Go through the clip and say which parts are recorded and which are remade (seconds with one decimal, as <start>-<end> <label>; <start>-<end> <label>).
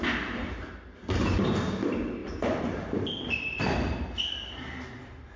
0.0-5.4 recorded